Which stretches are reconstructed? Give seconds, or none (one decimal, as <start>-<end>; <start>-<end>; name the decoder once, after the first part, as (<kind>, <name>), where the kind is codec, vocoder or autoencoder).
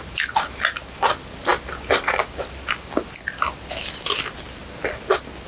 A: none